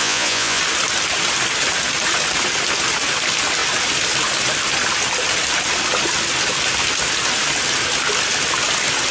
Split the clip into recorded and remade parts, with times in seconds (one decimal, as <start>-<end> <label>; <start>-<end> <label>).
0.0-0.6 remade; 0.6-9.1 recorded